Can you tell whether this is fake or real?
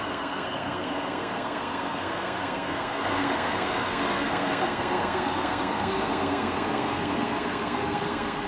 fake